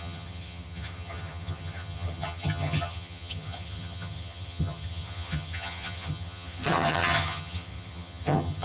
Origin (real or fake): fake